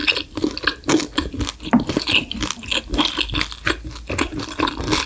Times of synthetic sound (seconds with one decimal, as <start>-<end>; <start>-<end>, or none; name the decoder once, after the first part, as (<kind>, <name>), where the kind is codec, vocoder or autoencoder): none